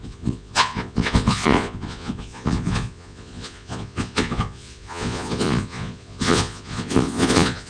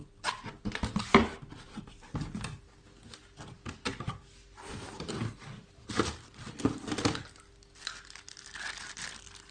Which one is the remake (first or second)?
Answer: first